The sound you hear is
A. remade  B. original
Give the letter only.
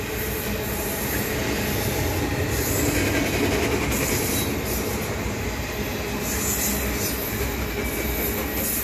B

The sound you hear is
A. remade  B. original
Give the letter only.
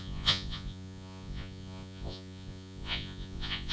A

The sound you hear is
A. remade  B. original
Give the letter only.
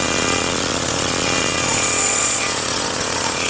A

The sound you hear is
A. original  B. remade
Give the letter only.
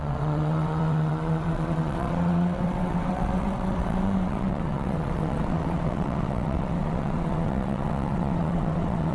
B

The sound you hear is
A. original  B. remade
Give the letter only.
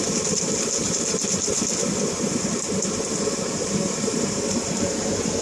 A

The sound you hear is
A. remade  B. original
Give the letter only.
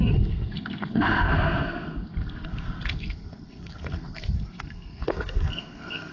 A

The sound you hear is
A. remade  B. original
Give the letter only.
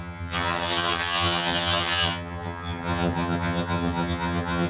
A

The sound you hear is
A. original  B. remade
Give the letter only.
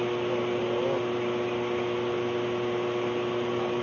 A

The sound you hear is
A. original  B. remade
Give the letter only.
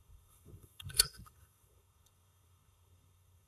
B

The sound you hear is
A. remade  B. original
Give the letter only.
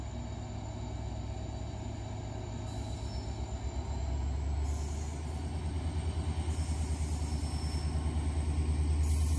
B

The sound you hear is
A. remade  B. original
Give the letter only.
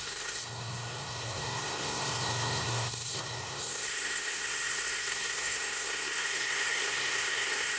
A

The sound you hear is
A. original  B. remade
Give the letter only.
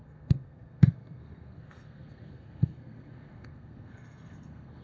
B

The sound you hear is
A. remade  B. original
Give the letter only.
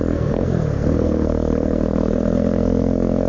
A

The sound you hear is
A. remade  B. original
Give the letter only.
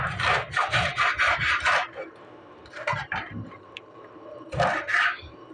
A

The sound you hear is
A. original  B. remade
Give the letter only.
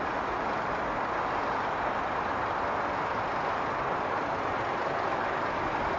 A